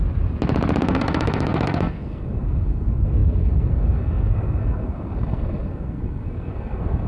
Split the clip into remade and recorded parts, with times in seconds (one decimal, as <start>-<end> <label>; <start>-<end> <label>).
0.0-0.8 recorded; 0.8-7.1 remade